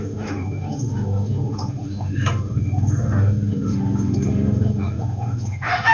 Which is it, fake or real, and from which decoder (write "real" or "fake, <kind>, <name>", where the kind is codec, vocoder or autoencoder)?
fake, autoencoder, DAC-VAE